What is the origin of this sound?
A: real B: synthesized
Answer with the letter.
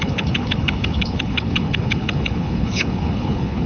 B